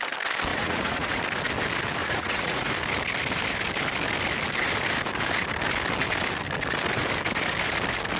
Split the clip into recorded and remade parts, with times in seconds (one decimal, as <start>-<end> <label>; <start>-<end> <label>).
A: 0.0-0.5 recorded; 0.5-1.2 remade; 1.2-2.0 recorded; 2.0-2.7 remade; 2.7-8.2 recorded